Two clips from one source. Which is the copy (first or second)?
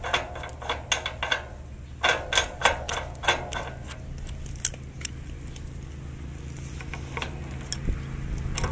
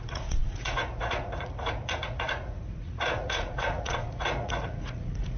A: second